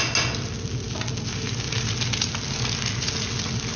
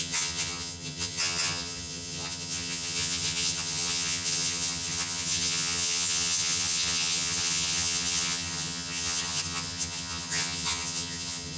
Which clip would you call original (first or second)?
first